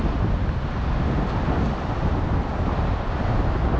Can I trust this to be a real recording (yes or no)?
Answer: yes